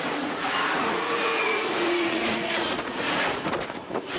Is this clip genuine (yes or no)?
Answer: no